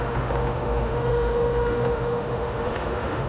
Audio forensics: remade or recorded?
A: remade